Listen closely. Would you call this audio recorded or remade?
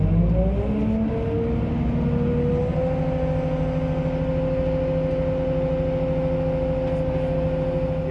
recorded